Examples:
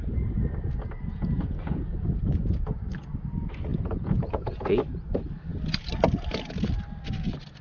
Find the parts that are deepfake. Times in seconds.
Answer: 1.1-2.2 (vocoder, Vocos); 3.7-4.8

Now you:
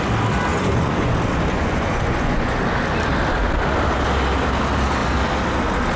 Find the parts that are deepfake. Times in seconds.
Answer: 0.5-1.1 (vocoder, Vocos); 1.5-2.6

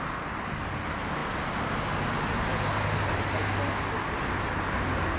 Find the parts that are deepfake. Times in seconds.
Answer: none

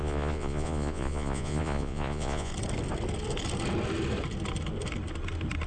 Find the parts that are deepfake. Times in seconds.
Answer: 0.0-2.5 (vocoder, Vocos)

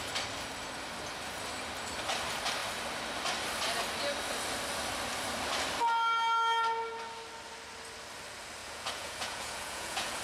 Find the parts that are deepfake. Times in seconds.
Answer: 8.6-10.2 (vocoder, Vocos)

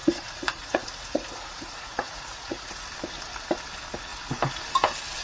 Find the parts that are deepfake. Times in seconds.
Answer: 0.0-2.7 (vocoder, Vocos)